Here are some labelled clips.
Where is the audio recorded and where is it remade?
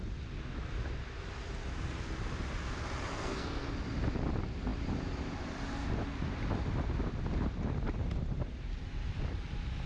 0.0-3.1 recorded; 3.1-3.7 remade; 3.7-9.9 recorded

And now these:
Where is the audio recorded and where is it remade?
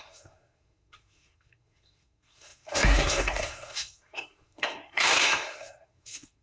0.0-6.4 remade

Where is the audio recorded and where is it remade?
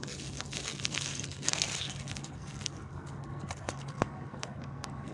0.0-5.1 remade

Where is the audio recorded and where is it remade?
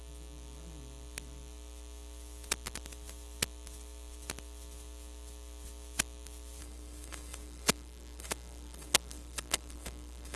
0.0-6.6 recorded; 6.6-10.4 remade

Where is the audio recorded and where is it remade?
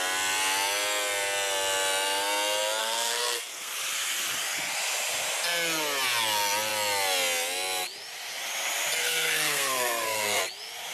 0.0-2.8 recorded; 2.8-3.7 remade; 3.7-9.0 recorded; 9.0-10.4 remade; 10.4-10.9 recorded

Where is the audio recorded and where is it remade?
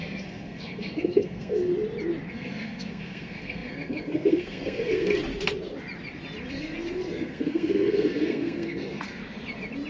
0.0-1.7 remade; 1.7-2.3 recorded; 2.3-5.2 remade; 5.2-6.5 recorded; 6.5-9.2 remade; 9.2-9.9 recorded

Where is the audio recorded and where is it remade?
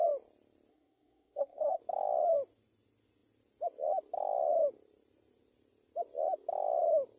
0.0-0.7 recorded; 0.7-1.8 remade; 1.8-7.2 recorded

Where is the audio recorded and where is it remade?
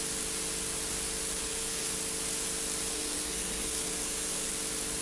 0.0-1.4 recorded; 1.4-1.9 remade; 1.9-2.9 recorded; 2.9-4.5 remade; 4.5-5.0 recorded